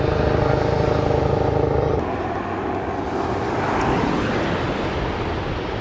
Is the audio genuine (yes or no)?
yes